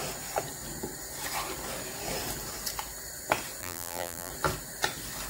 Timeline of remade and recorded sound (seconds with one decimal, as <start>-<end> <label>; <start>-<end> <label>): 0.0-3.6 recorded; 3.6-4.3 remade; 4.3-5.3 recorded